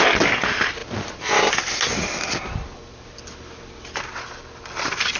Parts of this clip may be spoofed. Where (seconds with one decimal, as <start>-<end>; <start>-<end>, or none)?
none